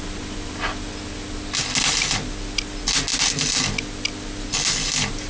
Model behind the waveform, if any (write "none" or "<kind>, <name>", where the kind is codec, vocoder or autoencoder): none